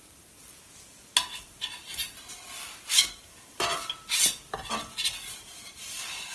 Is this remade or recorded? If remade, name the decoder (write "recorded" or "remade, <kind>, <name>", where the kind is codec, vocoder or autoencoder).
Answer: recorded